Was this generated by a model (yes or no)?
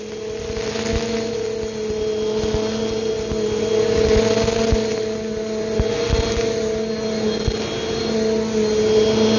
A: no